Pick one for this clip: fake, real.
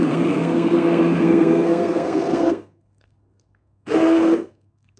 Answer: fake